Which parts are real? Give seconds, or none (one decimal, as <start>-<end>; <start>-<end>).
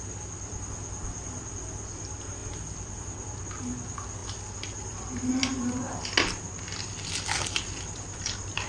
0.0-8.7